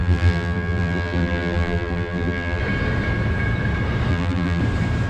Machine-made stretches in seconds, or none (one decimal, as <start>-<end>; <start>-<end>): 0.0-2.6; 4.1-4.6